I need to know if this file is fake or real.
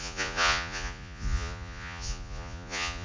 fake